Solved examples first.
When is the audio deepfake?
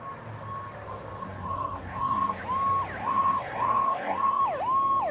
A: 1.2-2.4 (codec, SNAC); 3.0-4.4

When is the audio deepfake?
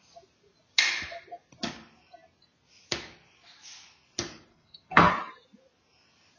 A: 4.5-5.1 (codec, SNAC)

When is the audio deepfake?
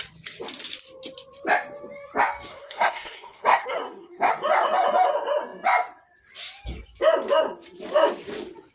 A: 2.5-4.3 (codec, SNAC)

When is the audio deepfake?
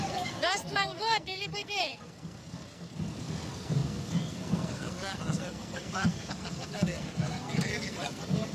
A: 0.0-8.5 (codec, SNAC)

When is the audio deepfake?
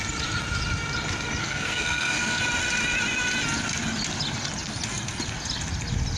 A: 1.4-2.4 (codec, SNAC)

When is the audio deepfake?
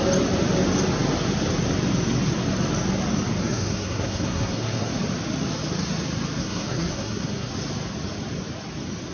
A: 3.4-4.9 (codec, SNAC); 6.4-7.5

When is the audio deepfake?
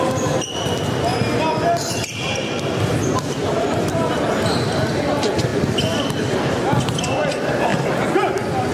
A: none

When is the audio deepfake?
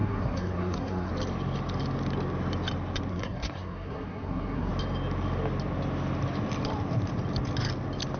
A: 0.0-1.1 (codec, SNAC); 3.1-4.7